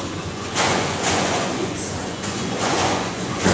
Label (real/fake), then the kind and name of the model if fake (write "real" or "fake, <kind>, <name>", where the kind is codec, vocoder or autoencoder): fake, vocoder, Vocos